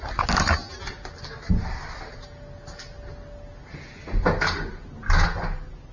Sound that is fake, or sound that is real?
real